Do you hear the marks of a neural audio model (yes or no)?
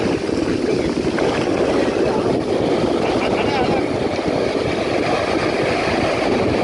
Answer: no